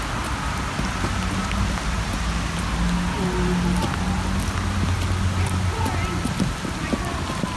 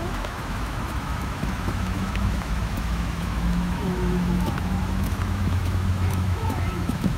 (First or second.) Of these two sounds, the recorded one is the first